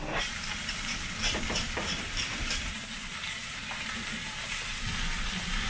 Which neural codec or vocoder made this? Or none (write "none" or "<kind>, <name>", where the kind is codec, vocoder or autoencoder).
vocoder, BigVGAN v2